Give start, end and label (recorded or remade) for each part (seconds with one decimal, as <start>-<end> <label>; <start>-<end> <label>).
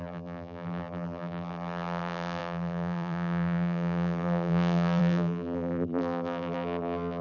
0.0-7.2 remade